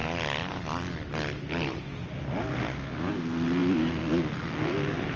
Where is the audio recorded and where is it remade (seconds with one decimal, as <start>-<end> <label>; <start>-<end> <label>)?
0.0-5.2 recorded